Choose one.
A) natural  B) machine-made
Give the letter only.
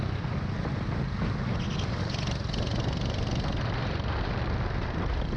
A